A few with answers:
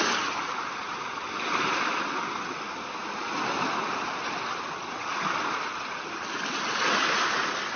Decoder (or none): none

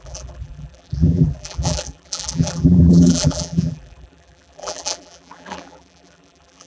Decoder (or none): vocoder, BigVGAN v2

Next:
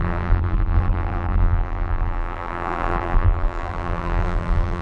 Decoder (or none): vocoder, BigVGAN v2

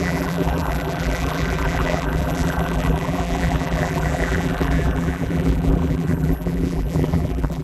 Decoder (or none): vocoder, BigVGAN v2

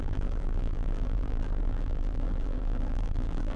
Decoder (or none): vocoder, BigVGAN v2